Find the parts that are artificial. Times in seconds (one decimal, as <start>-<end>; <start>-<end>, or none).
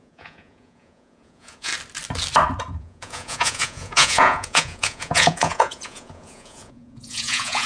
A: 0.0-1.7; 2.7-7.7